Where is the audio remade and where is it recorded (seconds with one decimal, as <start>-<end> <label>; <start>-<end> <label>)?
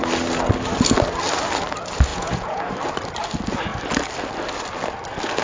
0.0-2.1 recorded; 2.1-2.7 remade; 2.7-5.4 recorded